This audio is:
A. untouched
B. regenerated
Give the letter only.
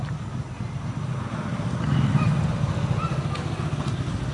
A